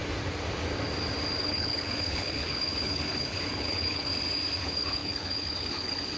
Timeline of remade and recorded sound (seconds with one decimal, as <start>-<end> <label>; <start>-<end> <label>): 0.0-1.4 recorded; 1.4-4.1 remade; 4.1-4.6 recorded; 4.6-6.2 remade